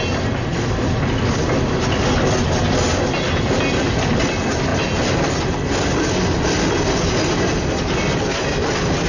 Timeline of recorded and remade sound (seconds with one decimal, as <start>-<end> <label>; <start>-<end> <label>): 0.0-9.1 recorded